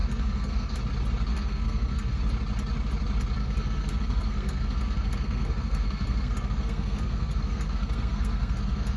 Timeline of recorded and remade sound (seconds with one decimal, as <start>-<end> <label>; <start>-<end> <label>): 0.0-0.8 remade; 0.8-1.3 recorded; 1.3-2.2 remade; 2.2-3.4 recorded; 3.4-9.0 remade